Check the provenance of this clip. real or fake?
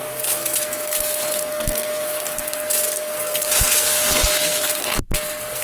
fake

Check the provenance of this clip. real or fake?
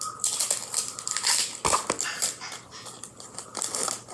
real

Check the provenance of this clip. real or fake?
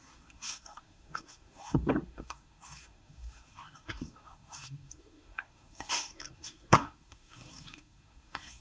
fake